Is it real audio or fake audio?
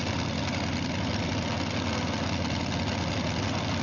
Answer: real